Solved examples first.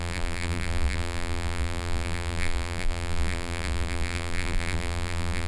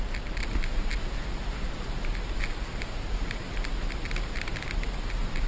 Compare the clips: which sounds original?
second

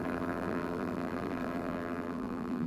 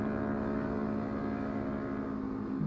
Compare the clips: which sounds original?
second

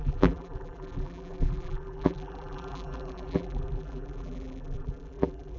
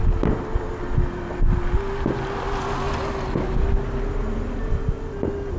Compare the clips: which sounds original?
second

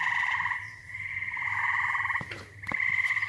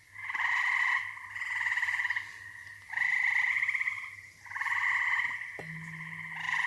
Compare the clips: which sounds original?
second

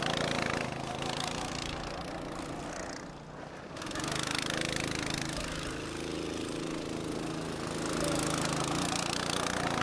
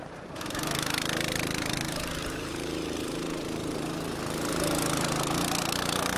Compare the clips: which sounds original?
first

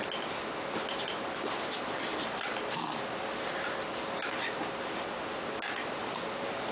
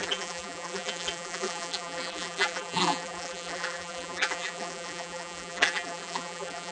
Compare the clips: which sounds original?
first